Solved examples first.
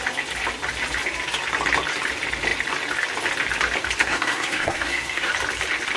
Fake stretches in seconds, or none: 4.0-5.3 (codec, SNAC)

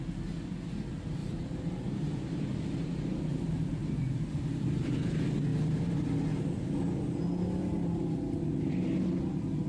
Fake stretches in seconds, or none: 1.2-2.0 (vocoder, BigVGAN v2); 3.3-3.9

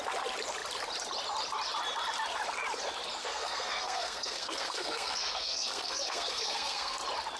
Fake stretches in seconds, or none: 3.2-7.0 (codec, SNAC)

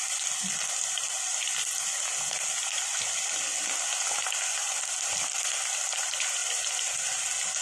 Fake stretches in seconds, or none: none

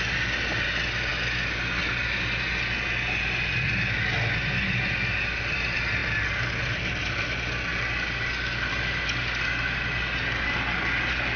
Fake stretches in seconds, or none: none

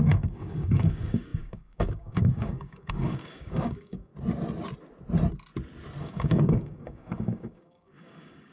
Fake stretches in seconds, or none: 0.0-4.1 (codec, DAC); 6.0-8.5